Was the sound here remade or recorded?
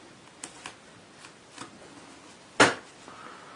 recorded